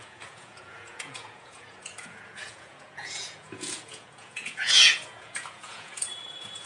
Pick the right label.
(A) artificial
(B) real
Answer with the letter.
A